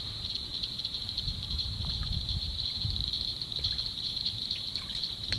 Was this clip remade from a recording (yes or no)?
yes